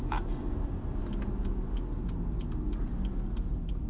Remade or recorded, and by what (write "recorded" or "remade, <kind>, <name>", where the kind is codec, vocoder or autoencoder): recorded